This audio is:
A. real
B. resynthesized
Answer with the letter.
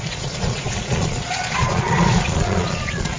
B